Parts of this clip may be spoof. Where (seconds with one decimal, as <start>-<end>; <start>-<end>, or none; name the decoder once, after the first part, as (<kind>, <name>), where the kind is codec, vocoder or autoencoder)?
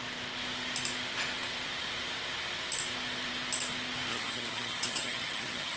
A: 4.1-5.8 (vocoder, HiFi-GAN)